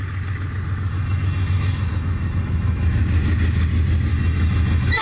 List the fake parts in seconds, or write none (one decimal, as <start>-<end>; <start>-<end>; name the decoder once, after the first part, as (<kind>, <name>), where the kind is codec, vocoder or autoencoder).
0.9-3.0 (autoencoder, DAC-VAE); 4.1-5.0